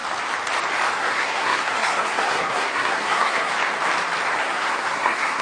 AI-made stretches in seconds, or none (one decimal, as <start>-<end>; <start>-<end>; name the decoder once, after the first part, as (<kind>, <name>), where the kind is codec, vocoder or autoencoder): 1.0-3.5 (codec, SNAC); 4.4-5.4